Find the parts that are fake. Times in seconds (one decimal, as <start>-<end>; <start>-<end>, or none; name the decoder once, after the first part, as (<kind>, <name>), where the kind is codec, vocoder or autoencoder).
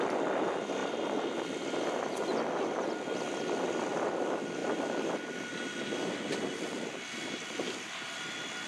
none